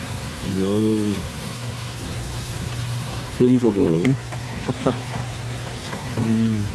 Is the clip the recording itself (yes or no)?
no